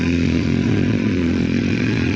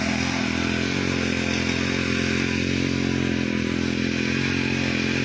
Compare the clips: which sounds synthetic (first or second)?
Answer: first